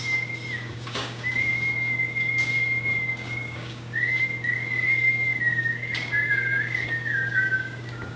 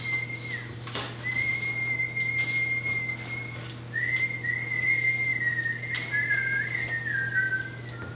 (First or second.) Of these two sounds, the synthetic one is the first